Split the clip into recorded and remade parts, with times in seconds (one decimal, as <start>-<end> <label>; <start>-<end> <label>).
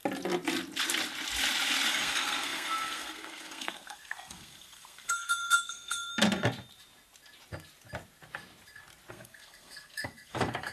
0.0-1.9 recorded; 1.9-6.1 remade; 6.1-9.1 recorded; 9.1-10.7 remade